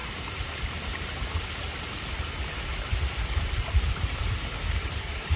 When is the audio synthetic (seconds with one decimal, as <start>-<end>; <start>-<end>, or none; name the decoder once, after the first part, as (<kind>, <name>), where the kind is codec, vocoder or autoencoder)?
0.0-1.4 (vocoder, BigVGAN v2); 2.7-5.4